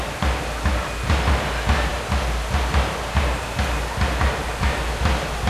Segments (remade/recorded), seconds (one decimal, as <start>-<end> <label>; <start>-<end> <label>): 0.0-5.5 recorded

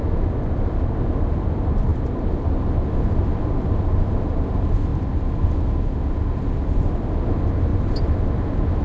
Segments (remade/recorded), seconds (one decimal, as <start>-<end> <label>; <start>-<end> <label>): 0.0-1.9 recorded; 1.9-3.4 remade; 3.4-7.7 recorded; 7.7-8.3 remade; 8.3-8.8 recorded

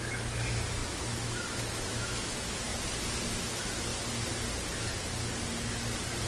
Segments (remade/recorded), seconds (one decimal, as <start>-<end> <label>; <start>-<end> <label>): 0.0-2.7 remade; 2.7-3.3 recorded; 3.3-3.9 remade; 3.9-6.3 recorded

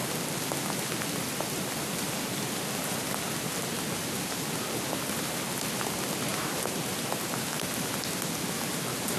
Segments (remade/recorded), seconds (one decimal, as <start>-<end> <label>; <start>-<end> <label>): 0.0-2.6 remade; 2.6-6.3 recorded; 6.3-8.1 remade; 8.1-9.2 recorded

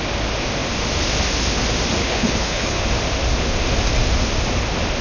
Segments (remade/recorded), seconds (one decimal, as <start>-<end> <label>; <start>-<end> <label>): 0.0-2.0 recorded; 2.0-2.8 remade; 2.8-5.0 recorded

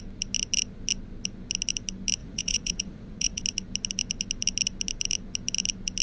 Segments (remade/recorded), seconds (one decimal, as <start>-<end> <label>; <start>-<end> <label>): 0.0-2.2 recorded; 2.2-3.4 remade; 3.4-6.0 recorded